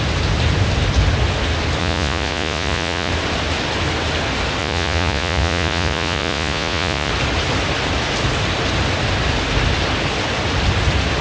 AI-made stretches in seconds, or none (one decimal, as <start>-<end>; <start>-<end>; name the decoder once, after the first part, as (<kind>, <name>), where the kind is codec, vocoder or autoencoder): 1.8-3.1 (vocoder, Vocos); 4.6-7.1